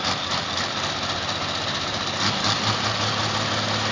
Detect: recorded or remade recorded